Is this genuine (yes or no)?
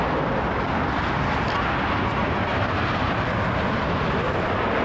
yes